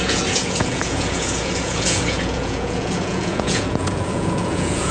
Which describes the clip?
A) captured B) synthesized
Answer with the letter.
B